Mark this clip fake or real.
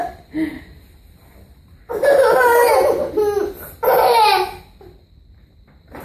real